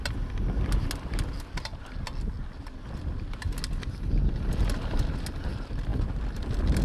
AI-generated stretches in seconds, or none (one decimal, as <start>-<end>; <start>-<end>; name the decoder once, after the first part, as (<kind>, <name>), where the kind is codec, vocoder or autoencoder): none